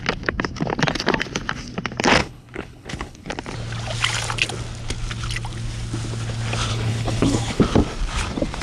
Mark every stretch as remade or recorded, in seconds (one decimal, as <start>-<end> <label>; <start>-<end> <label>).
0.0-2.2 recorded; 2.2-3.3 remade; 3.3-6.7 recorded; 6.7-7.6 remade; 7.6-8.6 recorded